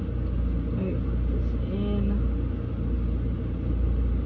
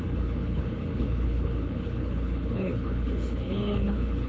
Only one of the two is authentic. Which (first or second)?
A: first